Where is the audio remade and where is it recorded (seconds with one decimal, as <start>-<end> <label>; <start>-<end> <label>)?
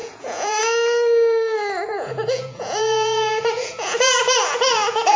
0.0-0.6 remade; 0.6-1.9 recorded; 1.9-5.2 remade